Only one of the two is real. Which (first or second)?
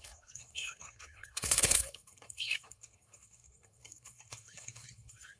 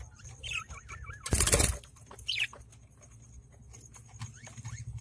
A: second